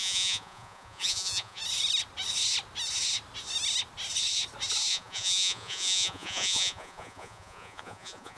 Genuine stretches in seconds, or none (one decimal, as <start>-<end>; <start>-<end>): 1.6-4.9

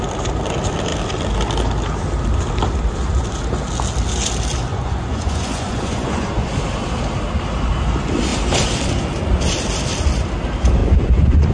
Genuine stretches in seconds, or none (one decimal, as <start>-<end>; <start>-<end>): 0.0-4.7; 6.5-10.8

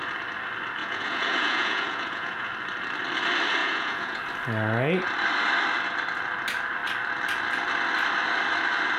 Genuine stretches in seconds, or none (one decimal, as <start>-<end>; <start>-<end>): 0.0-0.8; 2.5-3.6; 4.2-9.0

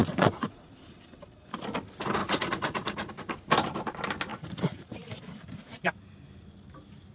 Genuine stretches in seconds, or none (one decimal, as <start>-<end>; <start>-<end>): 0.7-2.2; 3.1-4.3; 4.9-7.1